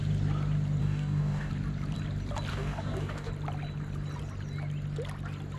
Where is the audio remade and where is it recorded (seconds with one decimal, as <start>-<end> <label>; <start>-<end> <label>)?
0.0-0.8 recorded; 0.8-1.5 remade; 1.5-2.5 recorded; 2.5-3.3 remade; 3.3-5.6 recorded